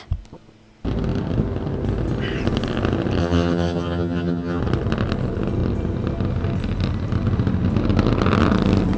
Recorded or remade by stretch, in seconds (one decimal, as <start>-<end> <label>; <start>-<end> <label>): 0.0-3.2 recorded; 3.2-4.6 remade; 4.6-9.0 recorded